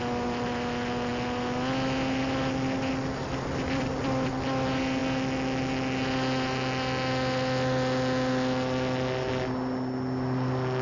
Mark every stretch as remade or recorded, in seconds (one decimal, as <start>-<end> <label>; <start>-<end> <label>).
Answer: 0.0-10.8 recorded